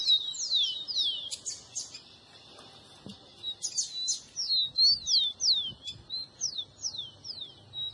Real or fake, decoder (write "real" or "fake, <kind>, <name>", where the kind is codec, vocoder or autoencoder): real